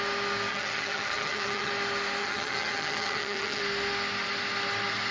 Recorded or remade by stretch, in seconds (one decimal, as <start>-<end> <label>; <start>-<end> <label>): 0.0-0.5 recorded; 0.5-1.7 remade; 1.7-2.2 recorded; 2.2-3.6 remade; 3.6-5.1 recorded